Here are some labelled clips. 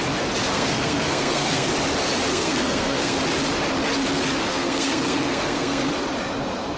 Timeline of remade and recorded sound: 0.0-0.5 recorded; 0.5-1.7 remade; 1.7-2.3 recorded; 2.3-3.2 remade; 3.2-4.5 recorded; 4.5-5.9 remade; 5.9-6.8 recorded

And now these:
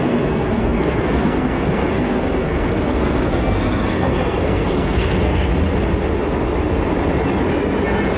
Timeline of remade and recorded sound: 0.0-5.5 remade; 5.5-8.2 recorded